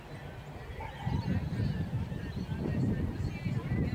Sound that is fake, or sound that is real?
real